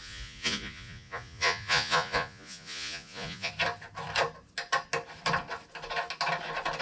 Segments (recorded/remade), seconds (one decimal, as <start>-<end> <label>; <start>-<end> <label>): 0.0-3.5 remade; 3.5-6.8 recorded